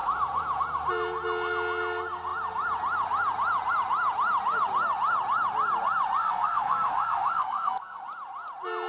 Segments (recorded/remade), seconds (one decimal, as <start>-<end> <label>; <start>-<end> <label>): 0.0-6.2 recorded; 6.2-8.0 remade; 8.0-8.9 recorded